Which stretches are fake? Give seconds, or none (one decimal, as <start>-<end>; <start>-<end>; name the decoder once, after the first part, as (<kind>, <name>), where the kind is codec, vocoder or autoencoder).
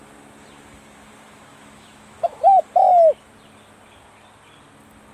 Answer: 1.5-2.4 (autoencoder, DAC-VAE)